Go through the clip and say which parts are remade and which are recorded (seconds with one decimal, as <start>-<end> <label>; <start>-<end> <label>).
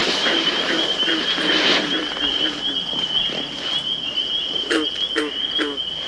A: 0.0-0.8 remade; 0.8-6.1 recorded